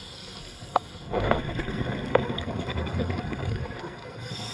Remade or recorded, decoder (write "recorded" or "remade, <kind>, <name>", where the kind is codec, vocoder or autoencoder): remade, codec, SNAC